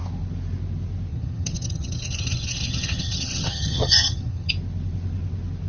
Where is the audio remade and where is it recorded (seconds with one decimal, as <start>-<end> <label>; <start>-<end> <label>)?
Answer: 0.0-1.1 recorded; 1.1-4.5 remade; 4.5-5.7 recorded